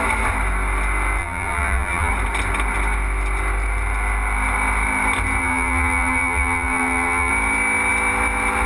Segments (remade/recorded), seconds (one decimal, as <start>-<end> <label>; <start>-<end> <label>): 0.0-1.2 recorded; 1.2-2.1 remade; 2.1-5.4 recorded; 5.4-7.3 remade; 7.3-8.7 recorded

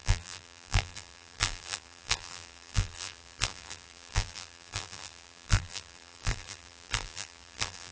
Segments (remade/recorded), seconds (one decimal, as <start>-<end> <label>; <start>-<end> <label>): 0.0-7.9 remade